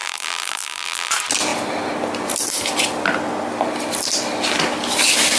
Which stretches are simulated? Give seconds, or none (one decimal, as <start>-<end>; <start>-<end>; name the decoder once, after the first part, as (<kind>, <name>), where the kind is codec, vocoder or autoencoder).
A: 0.0-1.1 (vocoder, BigVGAN v2)